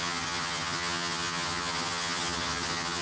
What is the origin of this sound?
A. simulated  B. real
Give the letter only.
A